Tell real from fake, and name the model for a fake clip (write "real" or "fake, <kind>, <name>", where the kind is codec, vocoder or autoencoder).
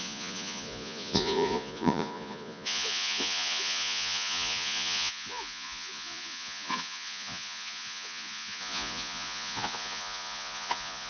fake, vocoder, Vocos